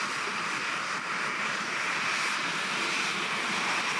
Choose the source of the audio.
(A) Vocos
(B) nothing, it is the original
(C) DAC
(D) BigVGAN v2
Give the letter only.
B